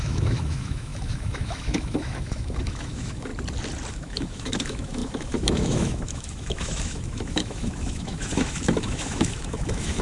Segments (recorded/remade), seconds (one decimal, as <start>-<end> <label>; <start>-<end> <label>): 0.0-3.3 remade; 3.3-3.9 recorded; 3.9-10.0 remade